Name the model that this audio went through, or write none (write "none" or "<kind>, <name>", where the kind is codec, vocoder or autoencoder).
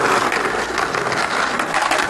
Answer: none